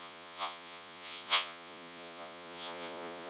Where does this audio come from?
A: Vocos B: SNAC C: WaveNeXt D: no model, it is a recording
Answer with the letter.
A